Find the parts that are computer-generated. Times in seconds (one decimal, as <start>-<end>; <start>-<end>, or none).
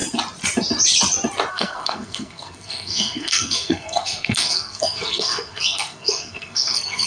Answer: 1.5-7.1